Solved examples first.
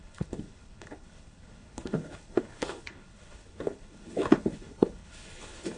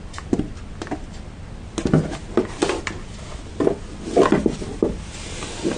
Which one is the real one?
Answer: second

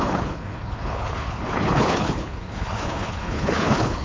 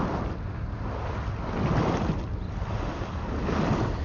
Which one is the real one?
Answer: second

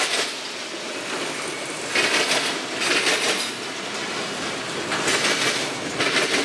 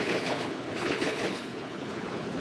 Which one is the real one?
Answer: first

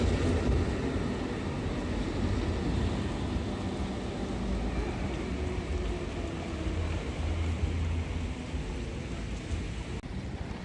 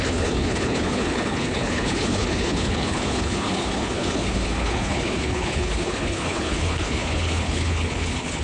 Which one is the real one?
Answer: first